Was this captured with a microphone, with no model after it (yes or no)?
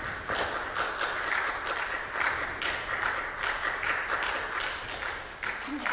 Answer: yes